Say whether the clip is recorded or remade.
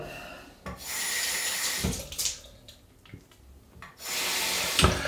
recorded